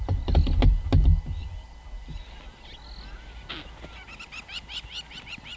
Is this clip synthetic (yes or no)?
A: no